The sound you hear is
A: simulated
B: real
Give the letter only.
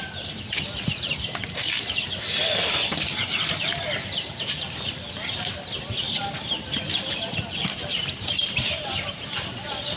A